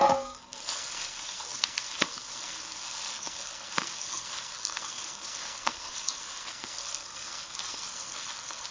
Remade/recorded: remade